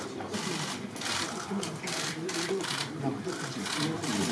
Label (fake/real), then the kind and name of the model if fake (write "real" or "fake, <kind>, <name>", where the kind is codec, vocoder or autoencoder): fake, vocoder, BigVGAN v2